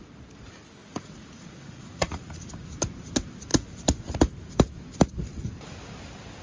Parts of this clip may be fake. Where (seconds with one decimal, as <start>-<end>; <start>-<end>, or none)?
0.8-2.5; 3.5-4.1